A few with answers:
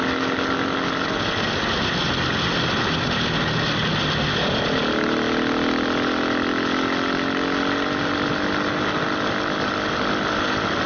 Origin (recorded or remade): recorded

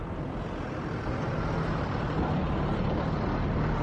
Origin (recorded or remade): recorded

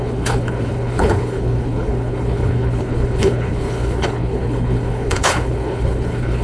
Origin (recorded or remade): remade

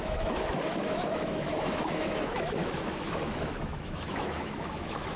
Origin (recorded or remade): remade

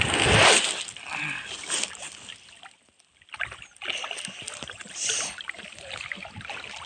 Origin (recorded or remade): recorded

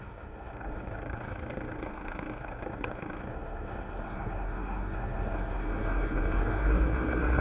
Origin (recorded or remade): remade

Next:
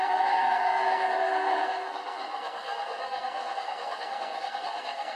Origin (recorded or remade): remade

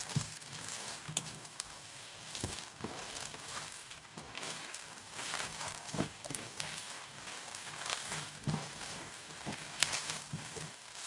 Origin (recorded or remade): remade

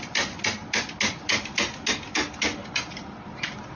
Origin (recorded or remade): recorded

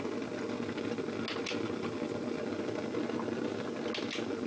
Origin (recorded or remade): recorded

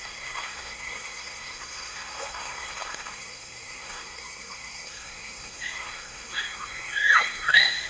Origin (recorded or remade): remade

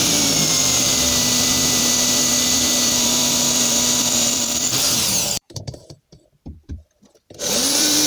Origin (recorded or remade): remade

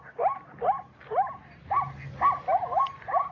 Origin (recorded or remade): recorded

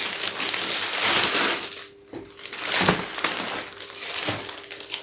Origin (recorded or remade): recorded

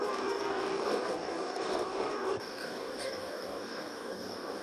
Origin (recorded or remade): remade